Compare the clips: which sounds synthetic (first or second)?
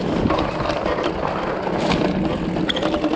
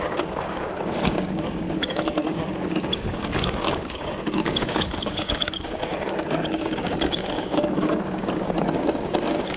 second